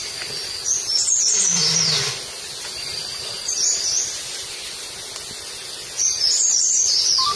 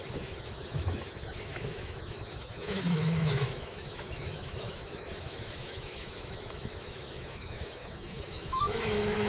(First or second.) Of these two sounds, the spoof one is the second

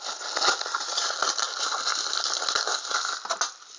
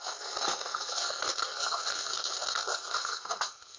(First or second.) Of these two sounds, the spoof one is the second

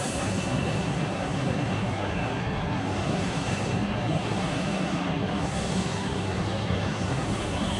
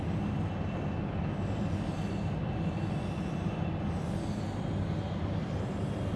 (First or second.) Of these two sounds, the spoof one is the first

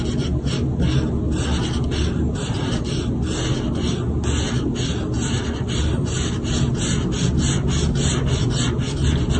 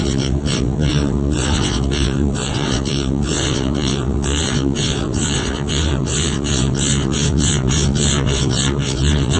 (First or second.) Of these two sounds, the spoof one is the second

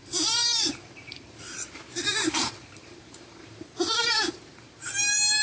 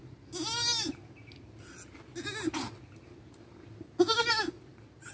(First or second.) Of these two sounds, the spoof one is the first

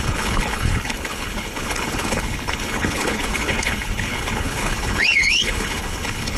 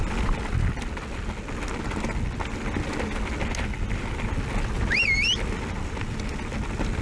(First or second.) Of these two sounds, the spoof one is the first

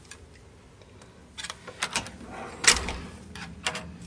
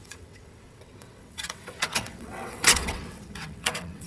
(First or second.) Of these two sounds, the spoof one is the second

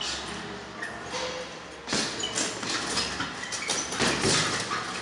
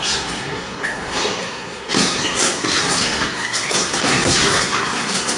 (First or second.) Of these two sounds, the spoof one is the second